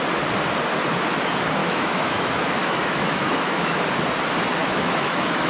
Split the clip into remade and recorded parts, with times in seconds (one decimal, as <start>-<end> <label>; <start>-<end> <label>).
0.0-1.6 recorded; 1.6-3.8 remade; 3.8-4.6 recorded; 4.6-5.5 remade